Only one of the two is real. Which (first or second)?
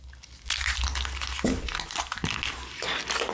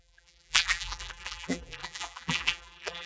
first